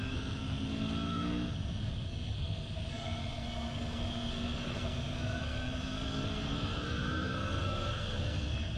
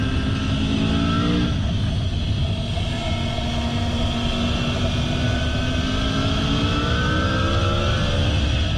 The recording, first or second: second